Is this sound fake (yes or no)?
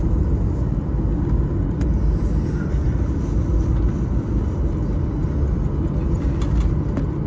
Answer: no